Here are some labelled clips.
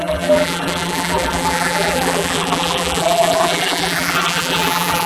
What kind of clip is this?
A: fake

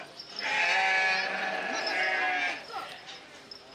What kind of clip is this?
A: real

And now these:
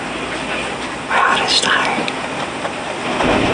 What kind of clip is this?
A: real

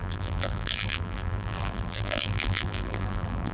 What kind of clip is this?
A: fake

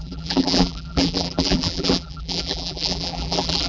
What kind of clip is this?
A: fake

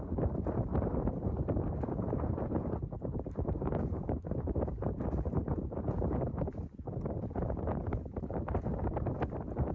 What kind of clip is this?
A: fake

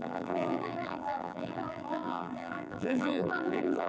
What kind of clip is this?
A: fake